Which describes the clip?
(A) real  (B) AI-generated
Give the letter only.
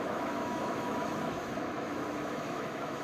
B